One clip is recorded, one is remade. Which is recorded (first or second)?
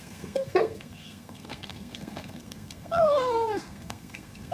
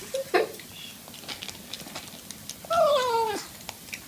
second